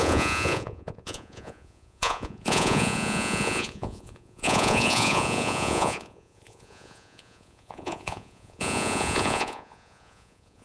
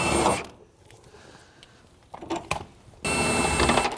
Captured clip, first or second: second